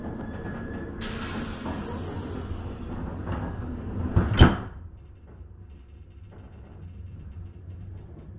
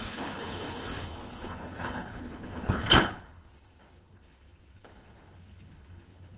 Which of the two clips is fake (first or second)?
second